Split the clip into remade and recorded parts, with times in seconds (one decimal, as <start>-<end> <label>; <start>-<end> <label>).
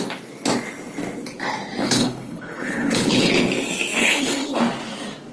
0.0-1.8 recorded; 1.8-3.3 remade; 3.3-4.0 recorded; 4.0-4.6 remade; 4.6-5.3 recorded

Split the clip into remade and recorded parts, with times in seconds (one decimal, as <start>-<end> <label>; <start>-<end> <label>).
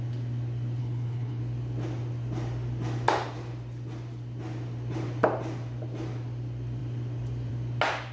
0.0-0.8 recorded; 0.8-1.4 remade; 1.4-8.1 recorded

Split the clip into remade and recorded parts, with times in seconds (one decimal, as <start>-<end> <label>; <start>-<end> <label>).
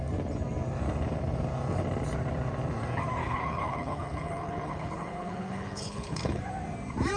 0.0-3.2 recorded; 3.2-6.4 remade; 6.4-7.2 recorded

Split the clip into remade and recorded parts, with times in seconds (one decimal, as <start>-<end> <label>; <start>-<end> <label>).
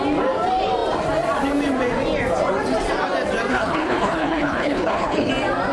0.0-3.5 recorded; 3.5-5.3 remade; 5.3-5.7 recorded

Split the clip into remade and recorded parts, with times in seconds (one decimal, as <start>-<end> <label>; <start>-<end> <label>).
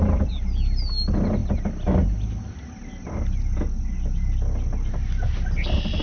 0.0-6.0 recorded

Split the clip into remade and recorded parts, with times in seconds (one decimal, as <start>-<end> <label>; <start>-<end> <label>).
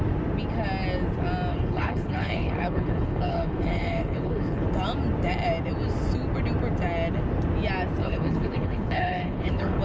0.0-1.5 recorded; 1.5-4.7 remade; 4.7-8.0 recorded; 8.0-9.8 remade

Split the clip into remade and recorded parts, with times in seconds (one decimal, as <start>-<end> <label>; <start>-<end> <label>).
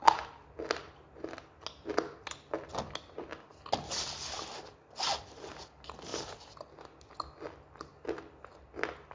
0.0-9.1 recorded